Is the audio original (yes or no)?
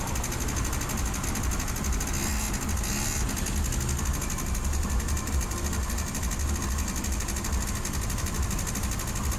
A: yes